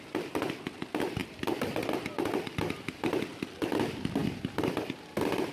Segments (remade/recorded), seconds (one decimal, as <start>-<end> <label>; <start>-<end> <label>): 0.0-4.2 recorded; 4.2-5.5 remade